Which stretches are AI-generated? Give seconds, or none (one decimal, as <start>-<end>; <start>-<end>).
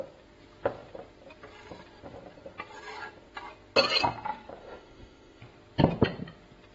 4.6-5.4